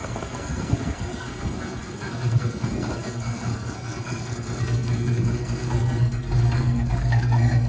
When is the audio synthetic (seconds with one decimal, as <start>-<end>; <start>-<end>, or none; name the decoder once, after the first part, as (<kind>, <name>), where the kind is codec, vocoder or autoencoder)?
0.0-7.7 (codec, SNAC)